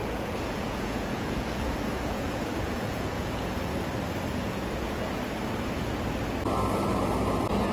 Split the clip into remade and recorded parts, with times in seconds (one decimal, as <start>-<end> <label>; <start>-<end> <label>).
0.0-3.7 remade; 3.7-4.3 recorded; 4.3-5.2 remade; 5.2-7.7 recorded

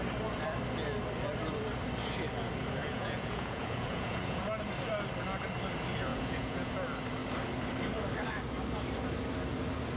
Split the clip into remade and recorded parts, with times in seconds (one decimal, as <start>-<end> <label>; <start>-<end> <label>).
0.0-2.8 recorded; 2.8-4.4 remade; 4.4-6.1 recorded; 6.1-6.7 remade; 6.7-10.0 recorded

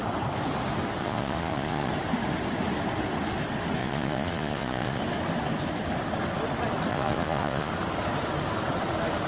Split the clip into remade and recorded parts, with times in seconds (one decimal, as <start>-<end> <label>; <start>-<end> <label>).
0.0-1.0 recorded; 1.0-1.9 remade; 1.9-3.8 recorded; 3.8-5.0 remade; 5.0-6.9 recorded; 6.9-7.7 remade; 7.7-9.3 recorded

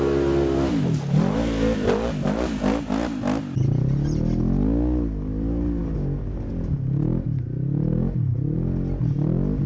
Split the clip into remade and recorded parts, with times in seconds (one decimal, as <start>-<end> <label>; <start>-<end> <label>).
0.0-9.7 recorded

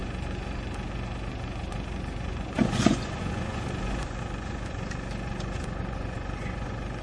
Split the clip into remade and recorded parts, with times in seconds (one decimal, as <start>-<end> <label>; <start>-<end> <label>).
0.0-7.0 remade

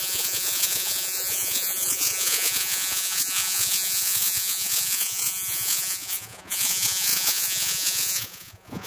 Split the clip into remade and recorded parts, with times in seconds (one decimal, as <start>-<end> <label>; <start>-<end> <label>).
0.0-8.9 remade

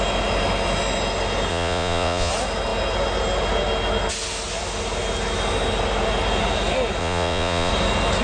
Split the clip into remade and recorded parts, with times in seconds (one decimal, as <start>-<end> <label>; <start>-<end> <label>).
0.0-1.5 recorded; 1.5-2.3 remade; 2.3-7.0 recorded; 7.0-7.7 remade; 7.7-8.2 recorded